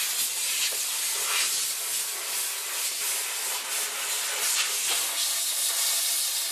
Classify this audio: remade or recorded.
recorded